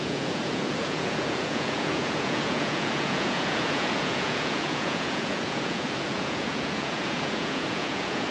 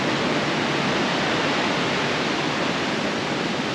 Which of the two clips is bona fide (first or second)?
second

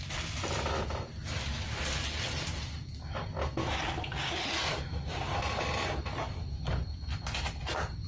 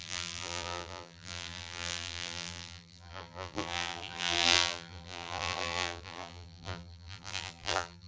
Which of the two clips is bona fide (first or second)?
first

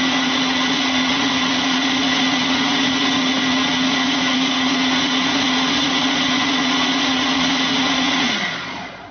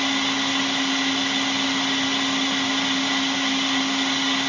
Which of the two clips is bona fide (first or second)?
second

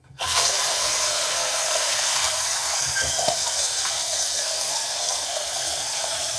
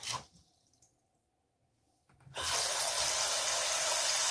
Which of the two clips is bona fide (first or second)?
second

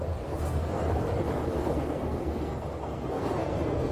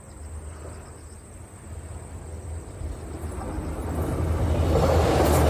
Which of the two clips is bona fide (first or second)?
second